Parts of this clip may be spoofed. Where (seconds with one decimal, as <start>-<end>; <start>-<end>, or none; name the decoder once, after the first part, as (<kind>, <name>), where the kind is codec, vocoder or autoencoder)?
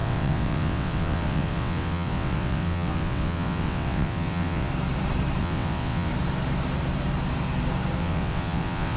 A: 0.0-4.7 (vocoder, WaveNeXt); 5.4-6.1; 8.0-9.0